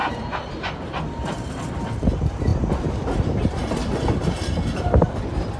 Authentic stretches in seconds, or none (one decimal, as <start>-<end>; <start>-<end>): 0.0-5.6

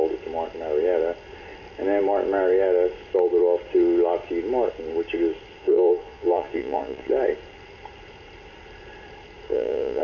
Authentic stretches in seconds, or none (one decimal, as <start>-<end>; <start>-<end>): 0.0-5.6; 7.1-9.5

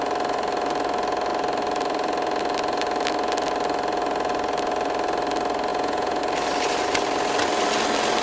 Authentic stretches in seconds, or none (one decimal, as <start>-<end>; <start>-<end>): 0.0-5.7; 6.2-8.2